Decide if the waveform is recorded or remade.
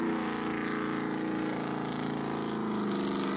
recorded